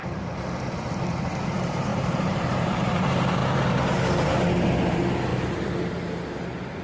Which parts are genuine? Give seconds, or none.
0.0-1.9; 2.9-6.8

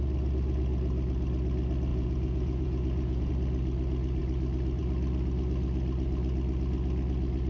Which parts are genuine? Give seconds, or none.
0.0-1.9; 3.3-7.5

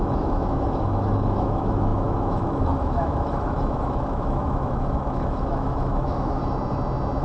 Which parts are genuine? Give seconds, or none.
6.4-7.2